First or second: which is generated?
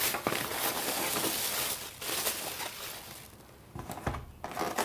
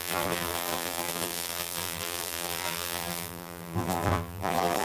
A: second